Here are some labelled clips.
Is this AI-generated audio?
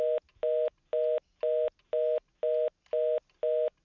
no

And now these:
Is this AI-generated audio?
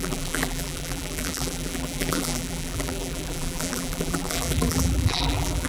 yes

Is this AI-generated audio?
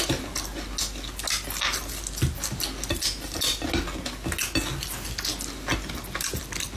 no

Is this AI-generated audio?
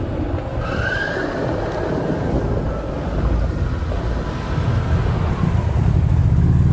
no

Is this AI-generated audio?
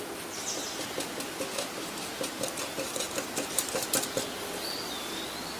no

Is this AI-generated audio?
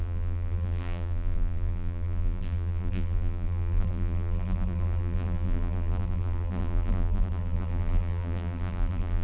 yes